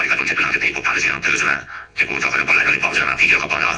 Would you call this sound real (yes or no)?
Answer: no